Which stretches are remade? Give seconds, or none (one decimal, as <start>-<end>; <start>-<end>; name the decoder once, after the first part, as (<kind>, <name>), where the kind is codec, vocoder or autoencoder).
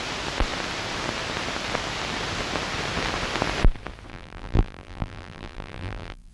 4.1-6.3 (vocoder, BigVGAN v2)